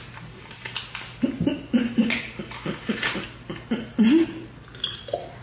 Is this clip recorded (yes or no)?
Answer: yes